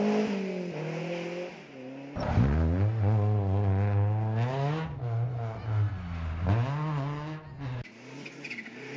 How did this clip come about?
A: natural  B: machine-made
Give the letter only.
A